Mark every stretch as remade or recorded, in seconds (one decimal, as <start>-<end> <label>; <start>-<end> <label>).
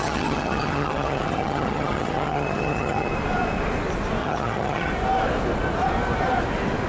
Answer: 0.0-3.1 remade; 3.1-4.2 recorded; 4.2-4.9 remade; 4.9-6.9 recorded